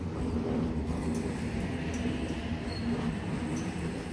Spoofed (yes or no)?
no